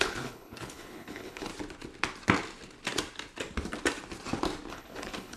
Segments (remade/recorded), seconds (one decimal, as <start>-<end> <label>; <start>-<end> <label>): 0.0-1.5 remade; 1.5-4.7 recorded; 4.7-5.4 remade